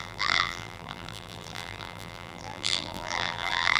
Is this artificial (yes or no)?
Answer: yes